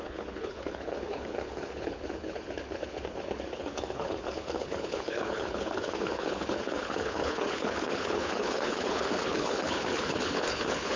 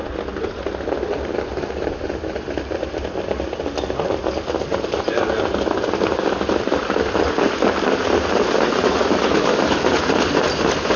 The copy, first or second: first